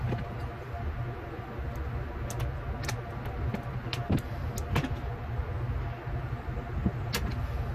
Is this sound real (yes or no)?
yes